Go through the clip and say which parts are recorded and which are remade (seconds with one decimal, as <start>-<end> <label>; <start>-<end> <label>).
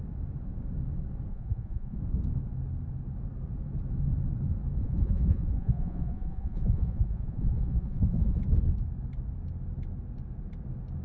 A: 0.0-1.3 recorded; 1.3-2.0 remade; 2.0-4.8 recorded; 4.8-8.4 remade; 8.4-11.0 recorded